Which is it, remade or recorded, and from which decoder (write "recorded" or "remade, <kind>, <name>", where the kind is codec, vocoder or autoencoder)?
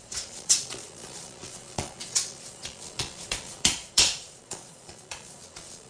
remade, vocoder, Vocos